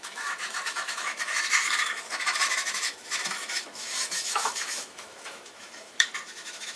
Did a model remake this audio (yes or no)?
yes